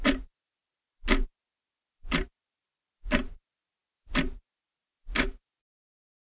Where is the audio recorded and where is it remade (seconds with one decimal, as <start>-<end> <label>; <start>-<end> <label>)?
0.0-6.3 recorded